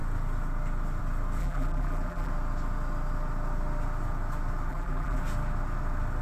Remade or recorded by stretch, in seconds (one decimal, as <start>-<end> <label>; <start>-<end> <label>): 0.0-1.4 recorded; 1.4-2.3 remade; 2.3-4.7 recorded; 4.7-5.2 remade; 5.2-6.2 recorded